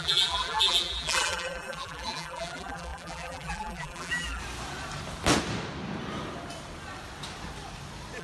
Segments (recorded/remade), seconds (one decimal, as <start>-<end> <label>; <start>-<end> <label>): 0.0-4.4 remade; 4.4-8.2 recorded